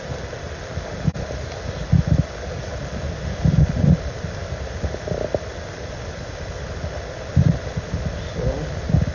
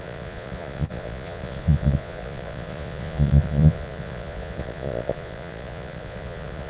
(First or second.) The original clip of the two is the first